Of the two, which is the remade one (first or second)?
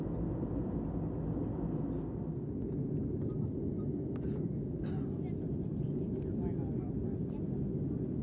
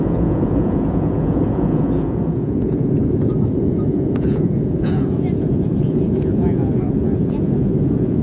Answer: second